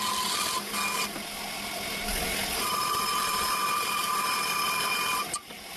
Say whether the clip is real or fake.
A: real